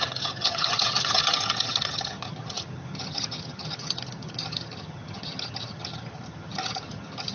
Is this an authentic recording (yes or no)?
no